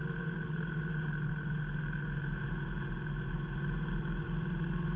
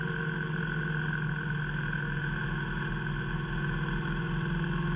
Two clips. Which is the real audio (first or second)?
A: second